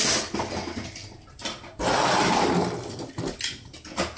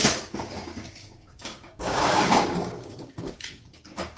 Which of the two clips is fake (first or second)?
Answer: second